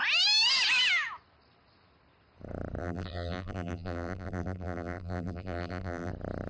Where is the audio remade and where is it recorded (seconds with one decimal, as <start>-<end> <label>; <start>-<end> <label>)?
0.0-2.8 recorded; 2.8-6.1 remade; 6.1-6.5 recorded